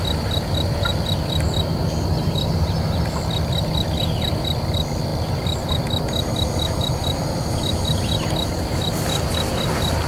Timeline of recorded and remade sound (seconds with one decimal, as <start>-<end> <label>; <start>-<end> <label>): 0.0-0.9 recorded; 0.9-3.2 remade; 3.2-5.1 recorded; 5.1-8.6 remade; 8.6-10.1 recorded